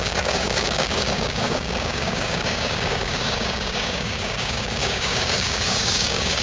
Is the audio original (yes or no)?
no